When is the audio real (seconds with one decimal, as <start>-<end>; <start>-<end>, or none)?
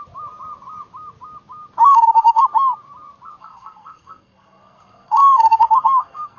0.0-1.9; 2.4-3.4